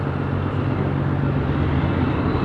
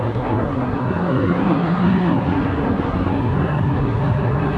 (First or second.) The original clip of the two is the first